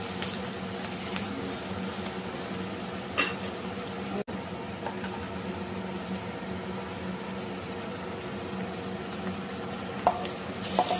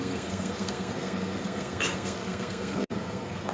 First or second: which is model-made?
second